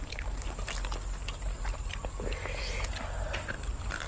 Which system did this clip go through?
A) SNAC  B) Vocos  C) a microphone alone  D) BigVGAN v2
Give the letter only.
C